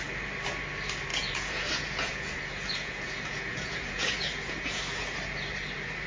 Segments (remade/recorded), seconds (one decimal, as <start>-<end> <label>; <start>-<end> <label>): 0.0-1.1 recorded; 1.1-4.8 remade; 4.8-6.1 recorded